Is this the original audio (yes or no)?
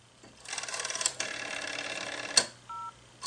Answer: yes